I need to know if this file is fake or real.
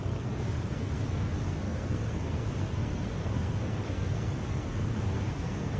fake